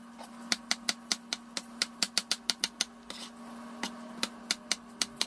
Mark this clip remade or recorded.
recorded